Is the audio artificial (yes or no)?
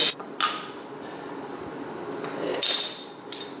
no